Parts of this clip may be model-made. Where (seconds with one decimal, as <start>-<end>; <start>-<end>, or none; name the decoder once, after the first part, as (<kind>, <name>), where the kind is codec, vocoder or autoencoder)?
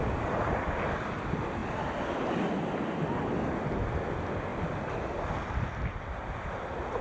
none